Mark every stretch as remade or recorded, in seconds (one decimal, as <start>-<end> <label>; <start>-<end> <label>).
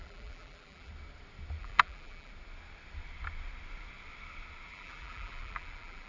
0.0-0.9 remade; 0.9-1.6 recorded; 1.6-2.3 remade; 2.3-4.7 recorded; 4.7-6.1 remade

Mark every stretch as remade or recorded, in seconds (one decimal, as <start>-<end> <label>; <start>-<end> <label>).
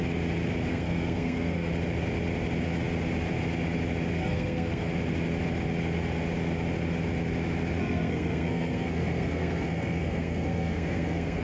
0.0-0.7 recorded; 0.7-1.7 remade; 1.7-4.2 recorded; 4.2-4.9 remade; 4.9-7.8 recorded; 7.8-11.4 remade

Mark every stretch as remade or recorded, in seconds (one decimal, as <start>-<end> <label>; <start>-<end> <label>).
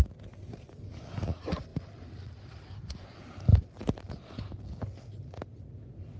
0.0-6.2 recorded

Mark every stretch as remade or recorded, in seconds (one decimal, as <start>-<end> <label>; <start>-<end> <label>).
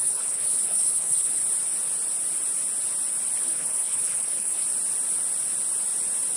0.0-1.4 remade; 1.4-3.4 recorded; 3.4-4.6 remade; 4.6-6.4 recorded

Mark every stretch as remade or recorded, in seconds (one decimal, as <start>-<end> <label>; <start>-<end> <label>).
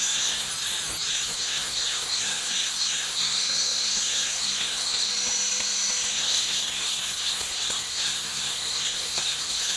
0.0-0.5 remade; 0.5-1.1 recorded; 1.1-5.1 remade; 5.1-6.1 recorded; 6.1-9.8 remade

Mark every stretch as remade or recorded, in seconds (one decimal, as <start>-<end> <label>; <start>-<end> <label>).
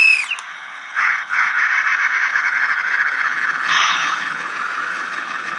0.0-0.5 recorded; 0.5-1.6 remade; 1.6-2.3 recorded; 2.3-4.5 remade; 4.5-4.9 recorded; 4.9-5.6 remade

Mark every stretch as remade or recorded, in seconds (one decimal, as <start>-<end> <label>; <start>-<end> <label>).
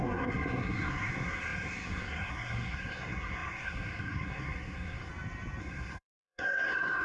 0.0-5.1 remade; 5.1-5.6 recorded; 5.6-7.0 remade